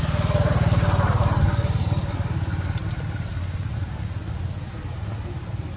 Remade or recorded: recorded